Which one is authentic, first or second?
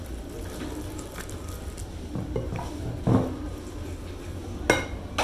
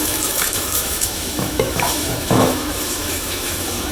first